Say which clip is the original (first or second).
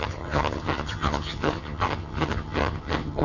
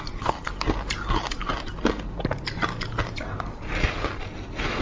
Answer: second